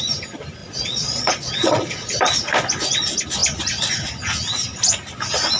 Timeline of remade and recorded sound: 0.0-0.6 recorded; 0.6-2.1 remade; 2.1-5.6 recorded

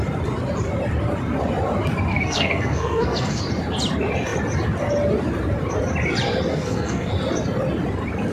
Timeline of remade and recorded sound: 0.0-2.1 recorded; 2.1-3.4 remade; 3.4-6.5 recorded; 6.5-7.1 remade; 7.1-8.3 recorded

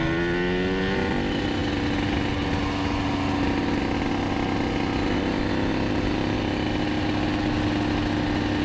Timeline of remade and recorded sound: 0.0-8.6 recorded

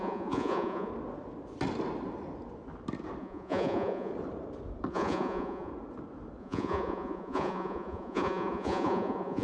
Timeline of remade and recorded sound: 0.0-0.9 remade; 0.9-3.2 recorded; 3.2-4.1 remade; 4.1-4.9 recorded; 4.9-5.7 remade; 5.7-6.4 recorded; 6.4-9.4 remade